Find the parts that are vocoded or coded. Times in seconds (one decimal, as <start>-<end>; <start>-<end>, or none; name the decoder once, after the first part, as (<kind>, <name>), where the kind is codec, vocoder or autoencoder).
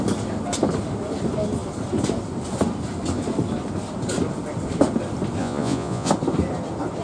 5.4-6.1 (vocoder, Vocos)